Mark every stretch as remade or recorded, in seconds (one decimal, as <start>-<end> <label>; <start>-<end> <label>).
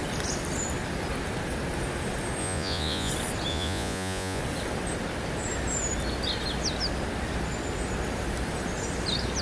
0.0-2.4 recorded; 2.4-3.1 remade; 3.1-3.5 recorded; 3.5-4.4 remade; 4.4-9.4 recorded